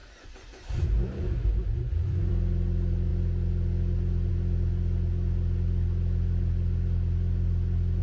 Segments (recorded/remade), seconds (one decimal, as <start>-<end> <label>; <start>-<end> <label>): 0.0-2.3 remade; 2.3-8.0 recorded